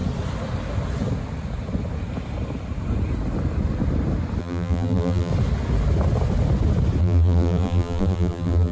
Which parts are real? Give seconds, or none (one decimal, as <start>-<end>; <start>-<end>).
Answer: 0.0-4.4; 5.3-7.0